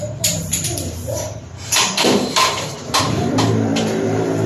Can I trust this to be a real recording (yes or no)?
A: no